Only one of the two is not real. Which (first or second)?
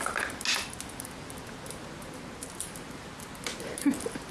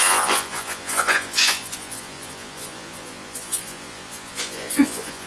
second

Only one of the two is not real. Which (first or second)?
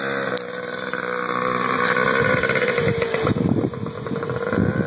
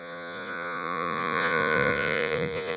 second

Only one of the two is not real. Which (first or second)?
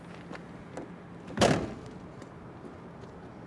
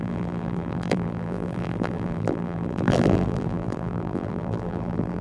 second